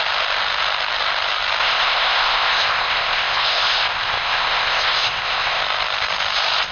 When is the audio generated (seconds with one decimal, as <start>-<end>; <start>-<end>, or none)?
1.6-5.6